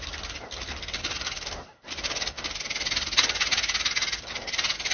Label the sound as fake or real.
real